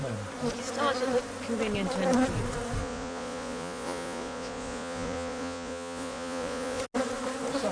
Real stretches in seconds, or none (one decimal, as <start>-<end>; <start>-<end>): 0.0-2.8; 6.8-7.7